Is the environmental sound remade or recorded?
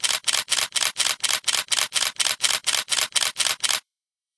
remade